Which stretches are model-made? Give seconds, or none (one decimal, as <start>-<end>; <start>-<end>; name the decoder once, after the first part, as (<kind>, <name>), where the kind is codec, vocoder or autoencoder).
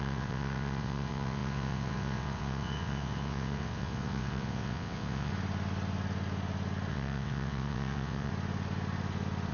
0.0-5.3 (vocoder, WaveNeXt); 6.9-8.3